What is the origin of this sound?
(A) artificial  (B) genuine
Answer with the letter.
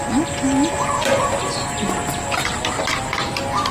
B